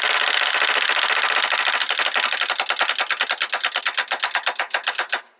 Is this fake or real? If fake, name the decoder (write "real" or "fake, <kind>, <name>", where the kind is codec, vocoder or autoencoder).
real